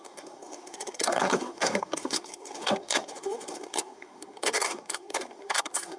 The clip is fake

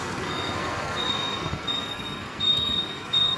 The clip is fake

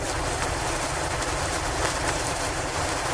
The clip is real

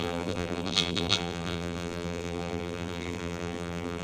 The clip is fake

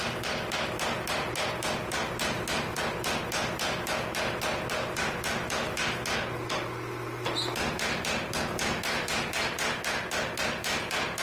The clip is real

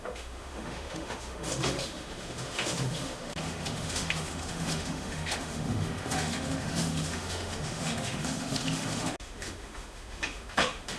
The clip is fake